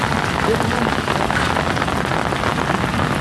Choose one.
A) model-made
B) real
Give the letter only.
B